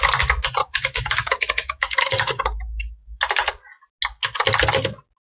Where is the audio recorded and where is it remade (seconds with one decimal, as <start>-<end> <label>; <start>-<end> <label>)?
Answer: 0.0-0.6 recorded; 0.6-3.2 remade; 3.2-5.3 recorded